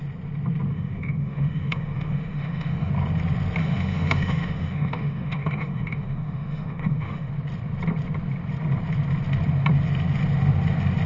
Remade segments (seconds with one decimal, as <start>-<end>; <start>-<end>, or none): 0.7-2.9; 3.6-7.3